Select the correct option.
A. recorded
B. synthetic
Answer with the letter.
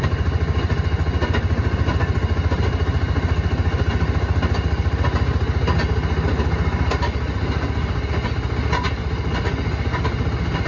A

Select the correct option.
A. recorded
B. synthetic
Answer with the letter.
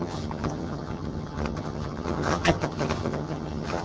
B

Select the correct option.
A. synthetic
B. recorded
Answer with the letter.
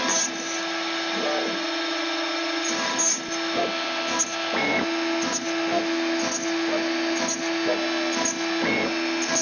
B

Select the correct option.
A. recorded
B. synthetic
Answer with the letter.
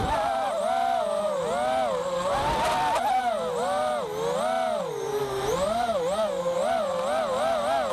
A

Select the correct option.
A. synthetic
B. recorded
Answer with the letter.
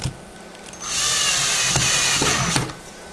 B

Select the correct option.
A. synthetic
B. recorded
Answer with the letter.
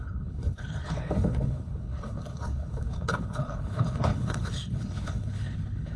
A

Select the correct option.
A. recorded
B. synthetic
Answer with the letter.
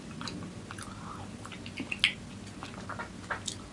A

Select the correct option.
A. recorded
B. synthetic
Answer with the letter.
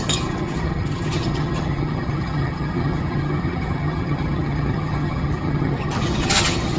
B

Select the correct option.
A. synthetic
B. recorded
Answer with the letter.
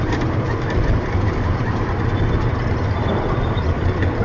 B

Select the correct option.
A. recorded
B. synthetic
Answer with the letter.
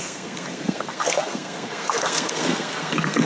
B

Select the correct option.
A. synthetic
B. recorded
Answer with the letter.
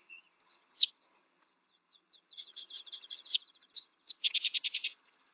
A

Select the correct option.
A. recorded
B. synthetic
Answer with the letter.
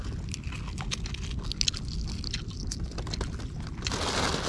A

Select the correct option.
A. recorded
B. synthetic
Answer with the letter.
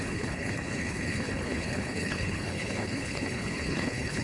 B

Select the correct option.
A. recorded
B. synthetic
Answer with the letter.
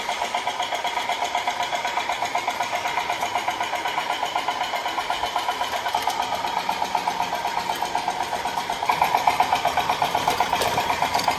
B